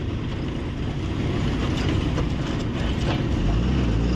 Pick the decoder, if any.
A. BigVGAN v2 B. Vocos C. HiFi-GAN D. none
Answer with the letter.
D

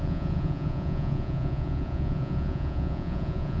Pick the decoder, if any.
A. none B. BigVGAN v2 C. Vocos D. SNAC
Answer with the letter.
C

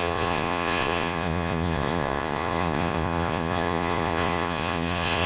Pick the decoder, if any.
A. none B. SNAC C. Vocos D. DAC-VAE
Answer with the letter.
C